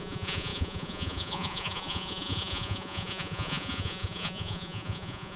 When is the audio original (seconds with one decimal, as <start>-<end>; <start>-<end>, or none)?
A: none